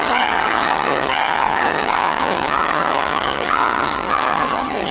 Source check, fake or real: fake